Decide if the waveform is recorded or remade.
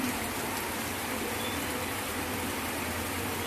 recorded